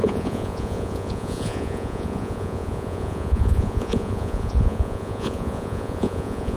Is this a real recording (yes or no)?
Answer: no